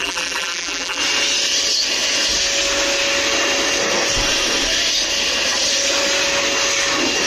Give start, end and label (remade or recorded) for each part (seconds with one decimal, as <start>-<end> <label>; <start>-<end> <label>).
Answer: 0.0-1.0 remade; 1.0-7.3 recorded